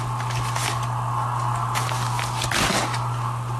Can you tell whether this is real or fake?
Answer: real